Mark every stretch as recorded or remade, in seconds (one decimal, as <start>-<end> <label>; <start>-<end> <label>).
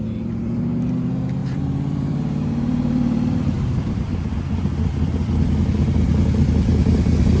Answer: 0.0-1.4 recorded; 1.4-4.4 remade; 4.4-7.4 recorded